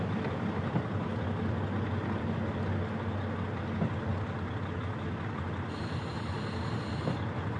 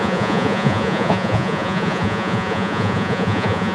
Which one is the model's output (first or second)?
second